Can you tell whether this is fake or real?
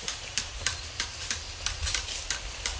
real